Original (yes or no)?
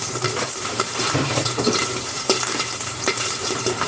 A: no